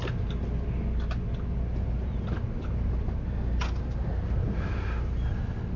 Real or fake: real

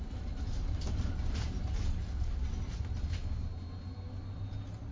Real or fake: real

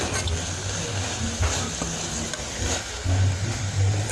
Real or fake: real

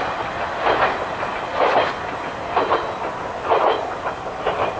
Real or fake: real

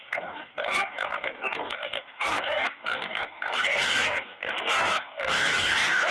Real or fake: fake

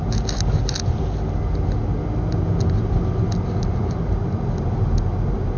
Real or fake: real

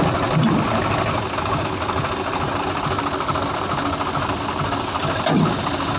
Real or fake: real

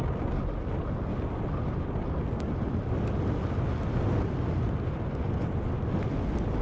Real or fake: real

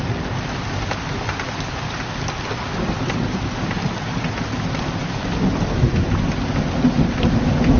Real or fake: real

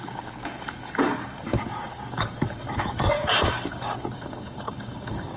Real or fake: fake